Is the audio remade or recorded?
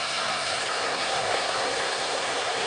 remade